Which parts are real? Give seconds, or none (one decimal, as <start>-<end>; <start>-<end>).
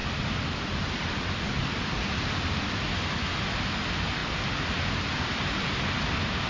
2.4-6.5